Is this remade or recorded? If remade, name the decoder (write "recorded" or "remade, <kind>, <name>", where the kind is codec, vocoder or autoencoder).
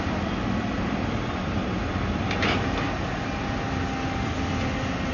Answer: recorded